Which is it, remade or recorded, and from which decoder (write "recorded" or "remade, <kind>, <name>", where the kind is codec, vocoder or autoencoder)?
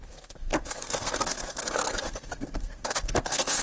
remade, codec, SNAC